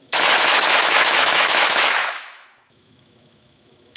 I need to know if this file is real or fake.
fake